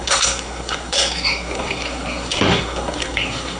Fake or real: fake